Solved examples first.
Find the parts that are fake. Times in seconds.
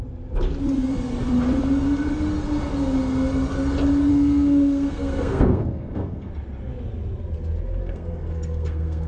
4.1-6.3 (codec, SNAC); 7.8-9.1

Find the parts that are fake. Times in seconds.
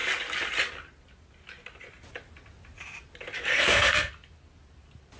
3.5-4.1 (codec, SNAC)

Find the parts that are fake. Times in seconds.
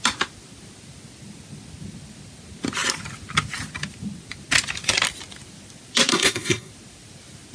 6.1-6.7 (codec, SNAC)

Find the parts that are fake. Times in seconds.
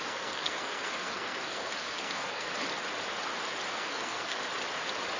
0.0-2.5 (codec, SNAC); 3.7-4.4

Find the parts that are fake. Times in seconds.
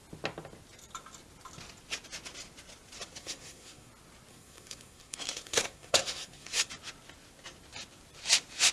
3.2-3.9 (codec, SNAC); 4.3-6.7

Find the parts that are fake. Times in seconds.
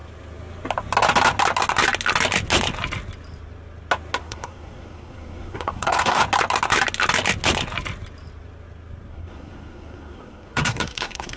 4.2-6.2 (codec, SNAC); 9.1-11.4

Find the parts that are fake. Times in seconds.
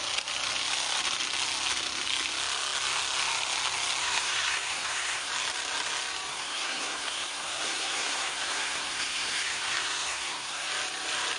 4.0-5.3 (codec, SNAC); 6.3-10.7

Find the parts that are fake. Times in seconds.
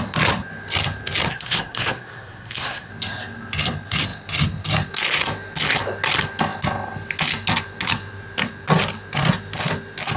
1.3-2.9 (codec, SNAC)